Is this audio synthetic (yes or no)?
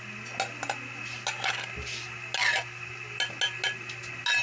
no